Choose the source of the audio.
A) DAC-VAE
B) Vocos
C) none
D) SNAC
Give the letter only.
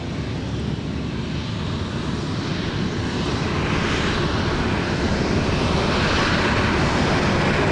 C